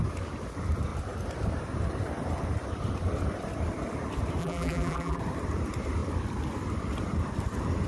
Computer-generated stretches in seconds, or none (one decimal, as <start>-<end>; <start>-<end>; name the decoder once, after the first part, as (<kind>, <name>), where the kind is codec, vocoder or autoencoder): 4.4-5.2 (vocoder, BigVGAN v2)